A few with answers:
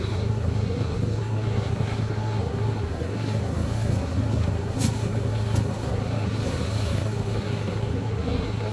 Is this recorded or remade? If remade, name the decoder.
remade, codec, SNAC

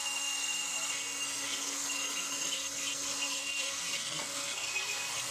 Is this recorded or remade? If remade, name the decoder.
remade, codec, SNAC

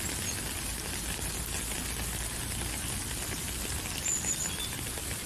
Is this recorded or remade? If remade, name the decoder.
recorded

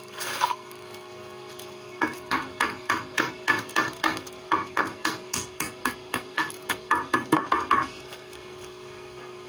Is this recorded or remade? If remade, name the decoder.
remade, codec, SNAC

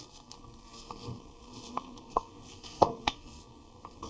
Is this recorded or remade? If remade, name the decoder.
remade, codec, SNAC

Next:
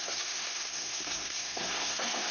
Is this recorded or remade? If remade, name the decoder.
remade, codec, SNAC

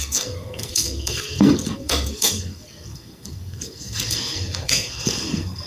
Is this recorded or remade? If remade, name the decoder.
remade, codec, SNAC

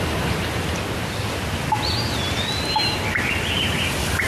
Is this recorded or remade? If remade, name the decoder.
recorded